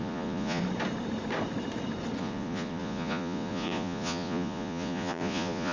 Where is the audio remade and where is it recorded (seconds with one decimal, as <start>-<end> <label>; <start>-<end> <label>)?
0.0-0.6 remade; 0.6-2.2 recorded; 2.2-5.7 remade